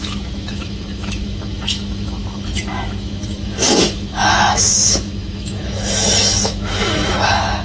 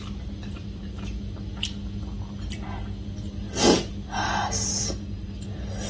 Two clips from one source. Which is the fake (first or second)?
first